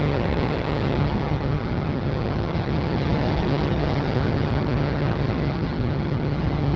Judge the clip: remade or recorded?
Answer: remade